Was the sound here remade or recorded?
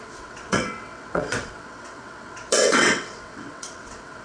remade